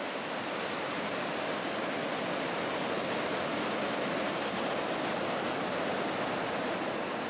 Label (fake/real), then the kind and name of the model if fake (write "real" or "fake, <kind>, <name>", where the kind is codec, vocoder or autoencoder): real